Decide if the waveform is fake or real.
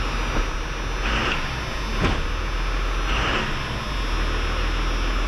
real